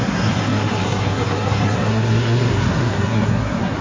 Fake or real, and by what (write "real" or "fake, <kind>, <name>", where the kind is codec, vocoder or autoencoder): fake, codec, SNAC